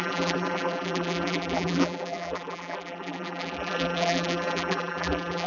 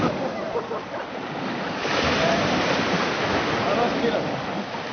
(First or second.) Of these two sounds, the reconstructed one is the first